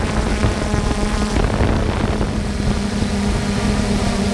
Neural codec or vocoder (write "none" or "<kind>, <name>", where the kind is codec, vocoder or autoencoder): none